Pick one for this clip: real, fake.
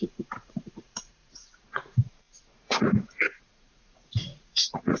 fake